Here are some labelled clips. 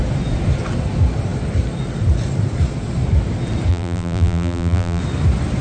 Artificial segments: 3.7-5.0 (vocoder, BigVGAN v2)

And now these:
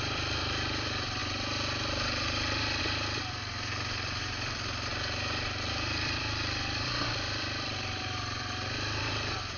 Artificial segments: 0.0-1.2 (vocoder, BigVGAN v2); 2.8-4.9; 5.7-9.6

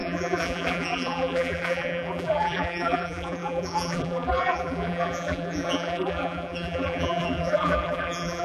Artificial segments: 0.0-8.4 (vocoder, BigVGAN v2)

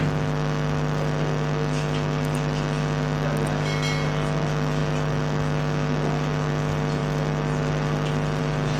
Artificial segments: none

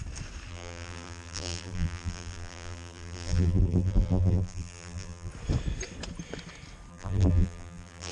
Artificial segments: 0.5-5.3 (vocoder, BigVGAN v2); 6.9-8.1

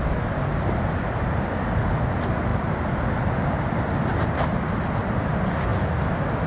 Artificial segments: none

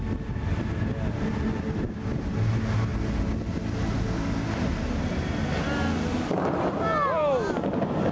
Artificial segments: none